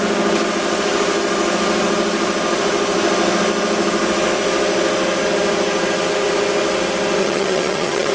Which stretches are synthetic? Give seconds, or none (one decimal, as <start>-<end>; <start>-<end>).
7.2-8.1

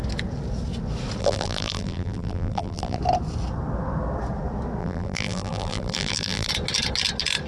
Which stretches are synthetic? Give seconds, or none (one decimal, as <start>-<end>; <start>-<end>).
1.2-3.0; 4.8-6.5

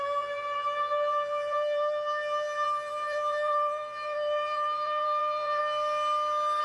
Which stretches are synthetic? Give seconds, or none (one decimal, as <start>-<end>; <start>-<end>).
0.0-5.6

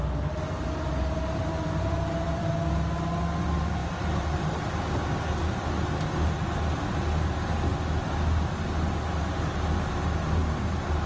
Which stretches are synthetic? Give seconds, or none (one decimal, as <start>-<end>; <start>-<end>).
1.4-2.5; 3.8-4.6

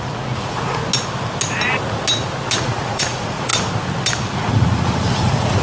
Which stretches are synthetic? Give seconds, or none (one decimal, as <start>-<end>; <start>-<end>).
0.0-0.8; 2.6-3.5; 4.3-5.6

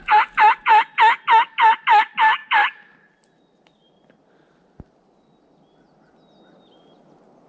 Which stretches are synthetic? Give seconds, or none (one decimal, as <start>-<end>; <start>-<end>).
none

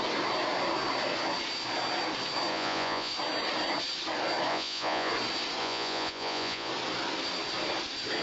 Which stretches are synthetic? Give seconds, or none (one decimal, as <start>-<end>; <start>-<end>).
2.5-3.1; 4.5-5.1; 5.6-6.7